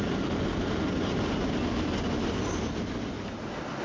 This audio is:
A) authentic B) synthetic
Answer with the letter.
A